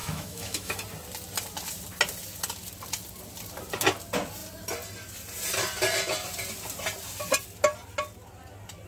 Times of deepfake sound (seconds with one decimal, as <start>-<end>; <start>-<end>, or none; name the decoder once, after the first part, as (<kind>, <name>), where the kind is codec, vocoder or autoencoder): 0.0-0.8 (autoencoder, DAC-VAE)